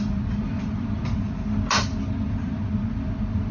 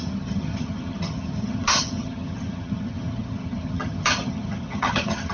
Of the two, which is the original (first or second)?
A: first